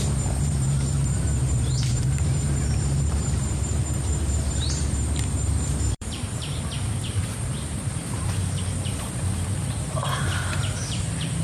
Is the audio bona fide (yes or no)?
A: no